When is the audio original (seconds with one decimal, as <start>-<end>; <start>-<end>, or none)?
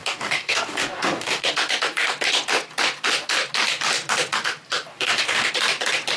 1.5-4.9; 5.5-6.2